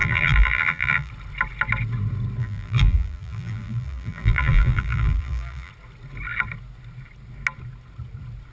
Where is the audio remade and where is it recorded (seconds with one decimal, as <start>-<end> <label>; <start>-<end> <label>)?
0.0-1.1 remade; 1.1-2.4 recorded; 2.4-5.7 remade; 5.7-8.5 recorded